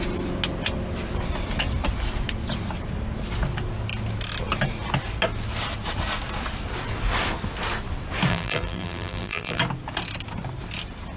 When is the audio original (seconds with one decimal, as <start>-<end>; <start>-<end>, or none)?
0.0-8.3; 9.6-11.2